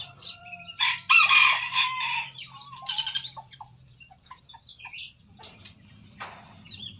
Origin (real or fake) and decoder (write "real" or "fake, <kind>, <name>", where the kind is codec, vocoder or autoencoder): fake, vocoder, BigVGAN v2